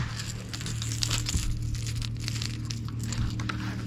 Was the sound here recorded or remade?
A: recorded